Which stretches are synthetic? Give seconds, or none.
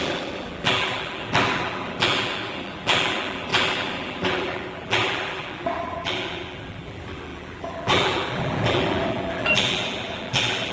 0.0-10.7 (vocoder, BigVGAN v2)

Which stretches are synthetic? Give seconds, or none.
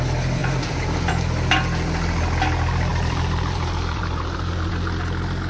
0.4-1.1 (vocoder, BigVGAN v2); 2.9-4.7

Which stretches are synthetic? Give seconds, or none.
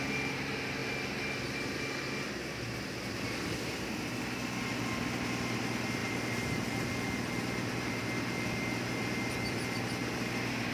6.0-6.9 (vocoder, BigVGAN v2)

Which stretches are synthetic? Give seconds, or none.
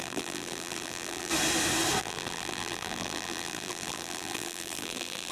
0.0-1.3 (vocoder, BigVGAN v2); 2.0-5.3